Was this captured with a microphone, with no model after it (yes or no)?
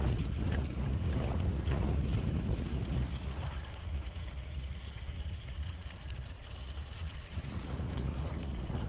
no